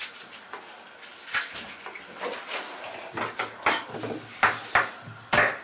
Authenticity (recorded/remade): recorded